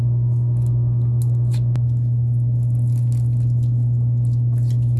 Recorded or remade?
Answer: recorded